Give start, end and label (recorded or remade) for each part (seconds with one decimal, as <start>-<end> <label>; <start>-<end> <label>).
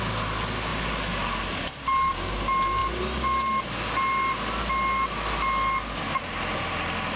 0.0-7.2 recorded